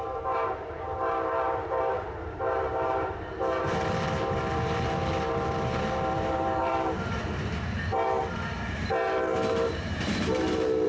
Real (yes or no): no